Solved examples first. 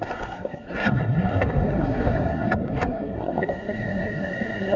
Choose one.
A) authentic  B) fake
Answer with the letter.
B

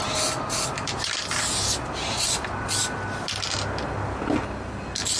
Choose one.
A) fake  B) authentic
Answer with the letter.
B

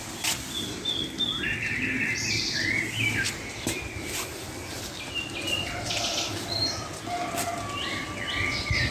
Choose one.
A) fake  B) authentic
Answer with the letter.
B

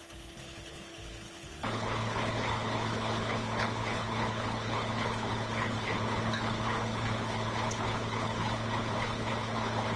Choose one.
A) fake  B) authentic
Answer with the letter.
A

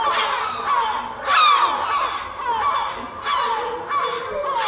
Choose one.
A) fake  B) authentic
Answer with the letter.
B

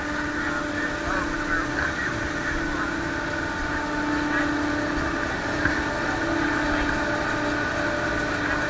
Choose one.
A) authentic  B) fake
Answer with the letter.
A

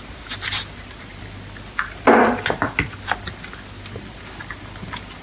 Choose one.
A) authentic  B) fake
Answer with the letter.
A